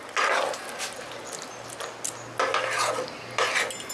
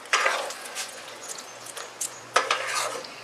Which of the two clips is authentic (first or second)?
first